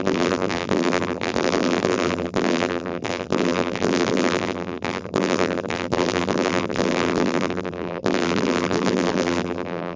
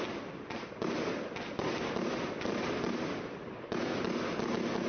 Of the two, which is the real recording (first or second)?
second